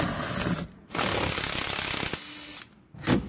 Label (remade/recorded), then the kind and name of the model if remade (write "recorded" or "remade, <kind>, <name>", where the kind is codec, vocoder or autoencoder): recorded